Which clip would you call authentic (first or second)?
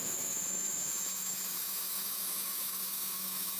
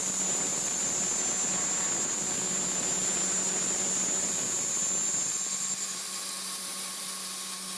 second